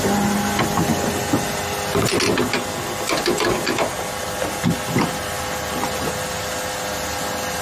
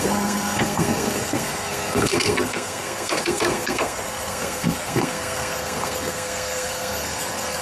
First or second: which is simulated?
second